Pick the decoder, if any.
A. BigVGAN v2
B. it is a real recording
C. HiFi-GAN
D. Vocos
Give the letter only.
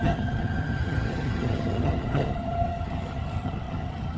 C